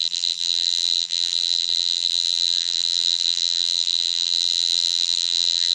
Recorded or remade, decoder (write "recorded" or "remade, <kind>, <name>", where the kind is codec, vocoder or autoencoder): remade, vocoder, BigVGAN v2